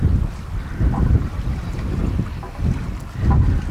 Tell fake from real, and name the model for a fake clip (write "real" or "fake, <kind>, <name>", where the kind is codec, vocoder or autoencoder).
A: real